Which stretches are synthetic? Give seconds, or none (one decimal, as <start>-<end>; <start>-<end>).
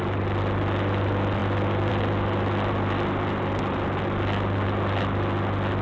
none